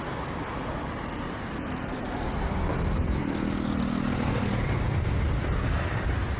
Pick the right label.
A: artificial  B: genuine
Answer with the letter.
B